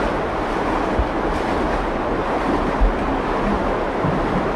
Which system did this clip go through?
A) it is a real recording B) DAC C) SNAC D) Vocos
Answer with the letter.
A